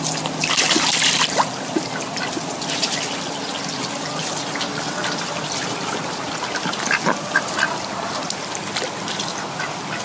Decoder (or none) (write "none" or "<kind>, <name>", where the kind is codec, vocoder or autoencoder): none